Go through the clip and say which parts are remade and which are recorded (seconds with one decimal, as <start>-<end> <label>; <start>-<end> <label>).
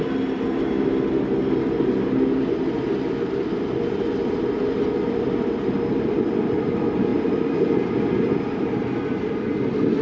0.0-10.0 recorded